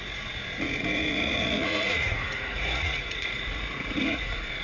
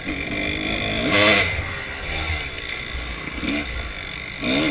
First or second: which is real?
second